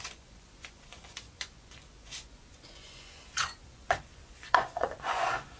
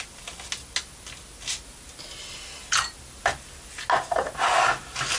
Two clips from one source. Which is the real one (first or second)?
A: second